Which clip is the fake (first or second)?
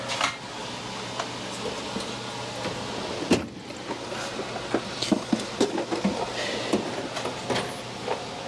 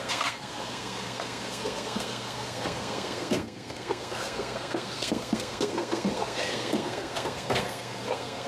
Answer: second